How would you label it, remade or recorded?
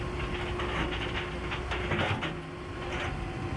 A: recorded